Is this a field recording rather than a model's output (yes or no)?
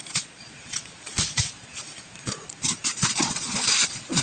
no